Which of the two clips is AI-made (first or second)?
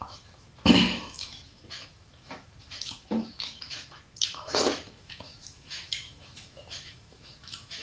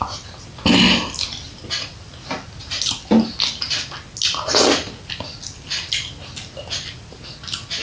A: first